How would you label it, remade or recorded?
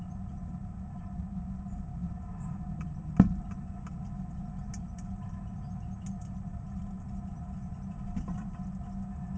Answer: recorded